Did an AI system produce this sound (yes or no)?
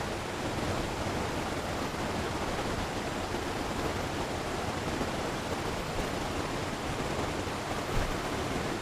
no